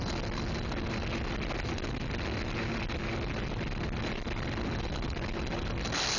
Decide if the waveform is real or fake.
real